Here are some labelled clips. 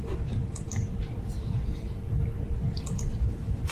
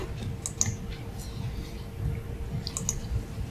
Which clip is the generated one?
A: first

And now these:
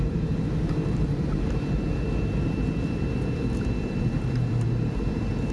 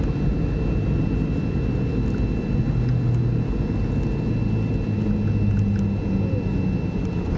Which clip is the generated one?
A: first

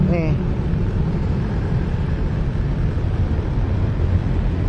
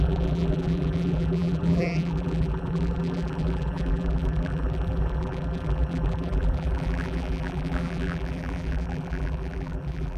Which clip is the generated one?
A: second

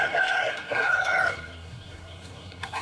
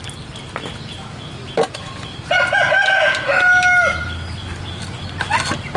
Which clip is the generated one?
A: first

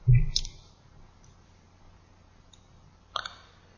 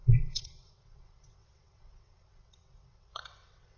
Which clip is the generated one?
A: second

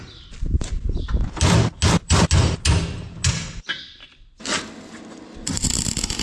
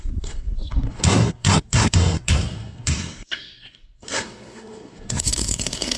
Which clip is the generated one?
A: second